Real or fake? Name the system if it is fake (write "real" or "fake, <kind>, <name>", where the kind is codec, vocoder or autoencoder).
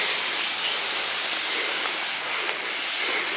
real